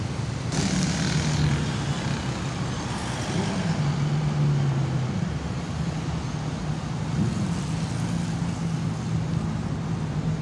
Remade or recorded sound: recorded